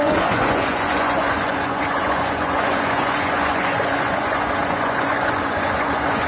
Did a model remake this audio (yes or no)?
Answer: yes